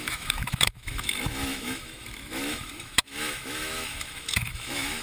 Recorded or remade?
remade